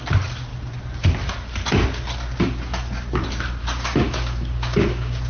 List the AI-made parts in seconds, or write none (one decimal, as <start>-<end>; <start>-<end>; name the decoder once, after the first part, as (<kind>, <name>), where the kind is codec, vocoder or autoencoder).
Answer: 3.6-5.3 (codec, DAC)